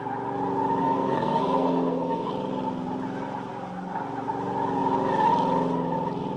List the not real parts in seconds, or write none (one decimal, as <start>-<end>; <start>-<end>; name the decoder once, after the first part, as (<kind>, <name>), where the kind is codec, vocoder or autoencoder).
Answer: 0.8-2.3 (codec, SNAC)